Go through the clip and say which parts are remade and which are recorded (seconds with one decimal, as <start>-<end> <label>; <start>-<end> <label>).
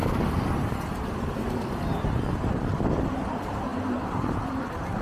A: 0.0-3.0 recorded; 3.0-5.0 remade